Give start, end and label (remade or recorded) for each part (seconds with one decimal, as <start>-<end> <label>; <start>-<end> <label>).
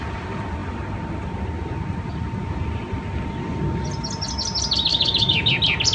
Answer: 0.0-4.9 recorded; 4.9-5.5 remade; 5.5-5.9 recorded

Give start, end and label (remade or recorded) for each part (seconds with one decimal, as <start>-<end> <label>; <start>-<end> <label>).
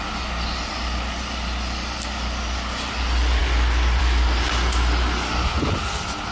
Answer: 0.0-6.3 recorded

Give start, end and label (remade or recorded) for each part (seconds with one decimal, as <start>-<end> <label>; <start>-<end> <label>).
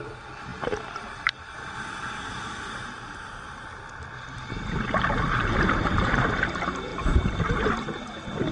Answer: 0.0-0.5 recorded; 0.5-4.5 remade; 4.5-6.9 recorded; 6.9-7.6 remade; 7.6-8.5 recorded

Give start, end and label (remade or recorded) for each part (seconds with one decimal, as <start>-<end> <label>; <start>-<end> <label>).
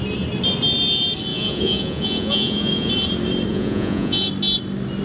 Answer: 0.0-1.3 recorded; 1.3-2.9 remade; 2.9-3.5 recorded; 3.5-4.3 remade; 4.3-5.0 recorded